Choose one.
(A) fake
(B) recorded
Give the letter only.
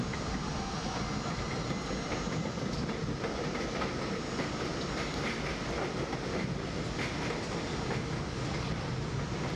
B